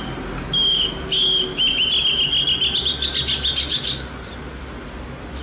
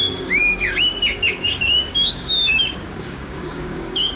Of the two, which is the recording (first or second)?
first